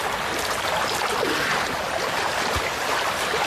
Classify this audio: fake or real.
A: real